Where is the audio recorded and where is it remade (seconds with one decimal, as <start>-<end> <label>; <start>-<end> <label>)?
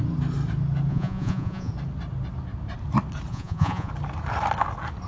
0.0-0.9 recorded; 0.9-1.7 remade; 1.7-3.3 recorded; 3.3-3.9 remade; 3.9-5.1 recorded